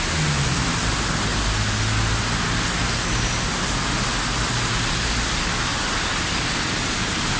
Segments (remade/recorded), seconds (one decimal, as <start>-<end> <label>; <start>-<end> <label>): 0.0-7.4 recorded